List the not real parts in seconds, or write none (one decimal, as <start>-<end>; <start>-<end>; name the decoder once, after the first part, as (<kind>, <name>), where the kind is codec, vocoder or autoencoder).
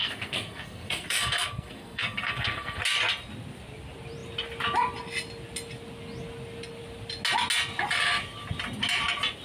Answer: 0.0-2.8 (codec, SNAC)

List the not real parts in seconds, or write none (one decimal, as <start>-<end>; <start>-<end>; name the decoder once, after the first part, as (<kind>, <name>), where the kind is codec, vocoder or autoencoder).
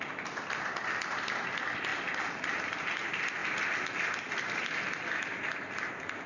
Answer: none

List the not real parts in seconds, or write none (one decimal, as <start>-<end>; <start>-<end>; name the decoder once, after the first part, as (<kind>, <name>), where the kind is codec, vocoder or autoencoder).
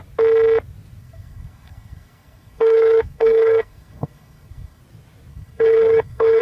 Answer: 1.0-4.8 (codec, SNAC); 5.3-6.4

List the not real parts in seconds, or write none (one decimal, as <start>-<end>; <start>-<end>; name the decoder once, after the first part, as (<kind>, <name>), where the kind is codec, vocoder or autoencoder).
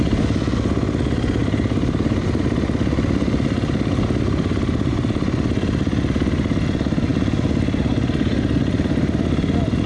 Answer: none